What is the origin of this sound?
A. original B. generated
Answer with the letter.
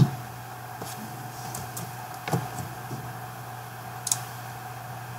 A